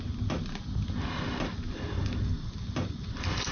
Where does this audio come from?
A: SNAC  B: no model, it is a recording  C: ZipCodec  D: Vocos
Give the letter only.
B